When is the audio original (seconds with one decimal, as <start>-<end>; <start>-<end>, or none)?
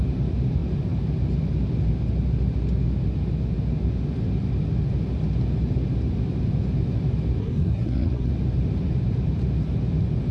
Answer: 0.0-7.4; 8.3-10.3